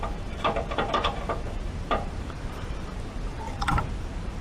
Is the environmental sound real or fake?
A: fake